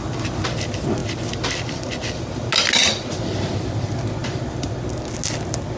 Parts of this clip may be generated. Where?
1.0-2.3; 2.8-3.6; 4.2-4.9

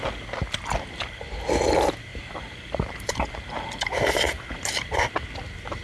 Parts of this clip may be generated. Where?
2.1-5.0

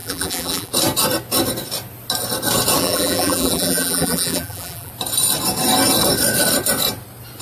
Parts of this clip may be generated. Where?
0.0-0.7; 2.8-4.9

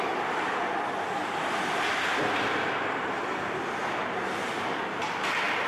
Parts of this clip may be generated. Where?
3.8-4.8

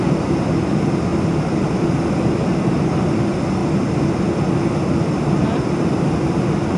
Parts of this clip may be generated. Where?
1.1-1.6

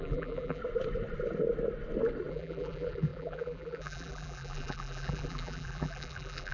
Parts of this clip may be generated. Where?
0.0-0.6; 2.3-6.5